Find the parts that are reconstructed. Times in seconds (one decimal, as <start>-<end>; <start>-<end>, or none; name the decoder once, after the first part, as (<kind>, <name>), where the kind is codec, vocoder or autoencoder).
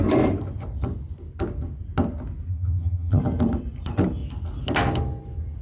2.5-3.2 (vocoder, HiFi-GAN)